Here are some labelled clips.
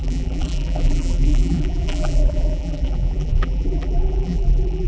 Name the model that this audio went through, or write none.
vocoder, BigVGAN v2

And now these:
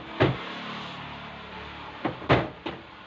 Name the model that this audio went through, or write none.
none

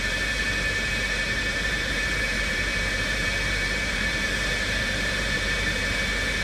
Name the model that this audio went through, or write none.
vocoder, BigVGAN v2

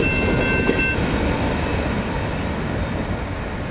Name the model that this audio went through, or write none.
none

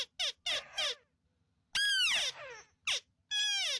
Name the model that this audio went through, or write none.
none